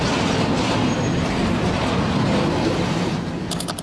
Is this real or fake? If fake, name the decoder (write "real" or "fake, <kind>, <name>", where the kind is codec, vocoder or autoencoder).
real